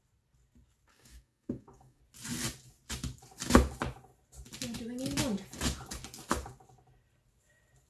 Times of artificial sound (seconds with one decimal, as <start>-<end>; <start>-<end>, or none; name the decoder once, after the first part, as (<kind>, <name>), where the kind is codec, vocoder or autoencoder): 0.9-2.0 (codec, DAC)